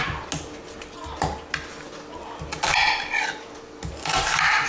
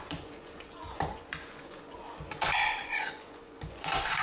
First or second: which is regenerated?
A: second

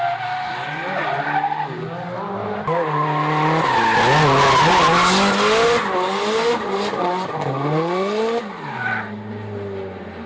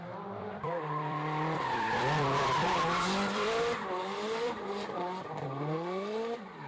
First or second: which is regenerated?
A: second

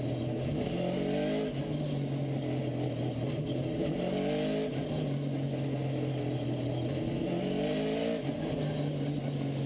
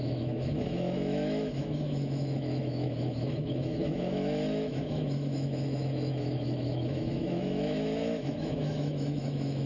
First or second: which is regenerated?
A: second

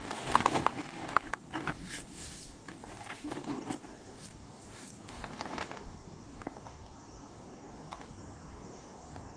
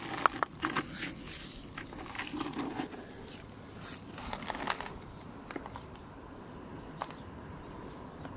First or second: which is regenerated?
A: first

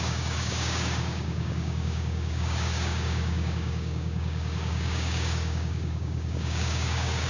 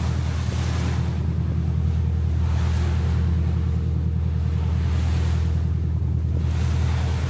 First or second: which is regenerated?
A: first